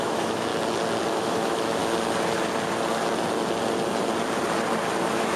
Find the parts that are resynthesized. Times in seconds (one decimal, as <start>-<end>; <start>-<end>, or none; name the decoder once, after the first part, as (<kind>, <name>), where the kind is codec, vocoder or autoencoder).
0.0-0.5 (autoencoder, DAC-VAE); 1.1-1.8; 5.0-5.4